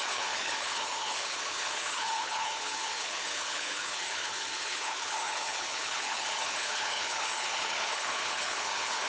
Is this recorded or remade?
remade